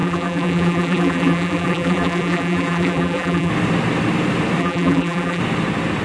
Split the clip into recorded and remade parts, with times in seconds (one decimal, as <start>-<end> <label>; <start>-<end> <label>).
0.0-3.5 remade; 3.5-4.6 recorded; 4.6-5.4 remade; 5.4-6.0 recorded